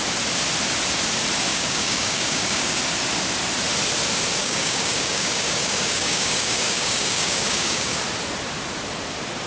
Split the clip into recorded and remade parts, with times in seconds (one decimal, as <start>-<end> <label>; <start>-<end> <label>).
0.0-1.5 recorded; 1.5-2.8 remade; 2.8-4.4 recorded; 4.4-8.0 remade; 8.0-9.5 recorded